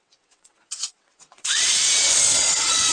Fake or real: fake